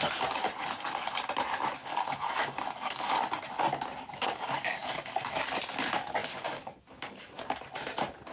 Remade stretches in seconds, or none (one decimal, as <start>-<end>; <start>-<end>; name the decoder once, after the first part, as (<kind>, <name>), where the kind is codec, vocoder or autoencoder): 1.8-3.2 (codec, DAC); 4.1-5.4; 6.2-7.4